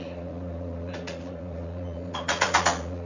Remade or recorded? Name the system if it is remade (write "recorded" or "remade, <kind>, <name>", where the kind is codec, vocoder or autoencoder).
remade, vocoder, Vocos